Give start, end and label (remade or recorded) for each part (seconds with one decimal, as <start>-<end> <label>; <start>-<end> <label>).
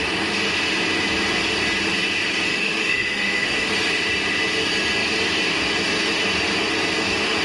0.0-2.5 recorded; 2.5-3.7 remade; 3.7-7.4 recorded